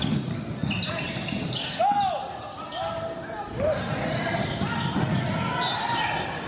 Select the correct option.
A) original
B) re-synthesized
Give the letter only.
A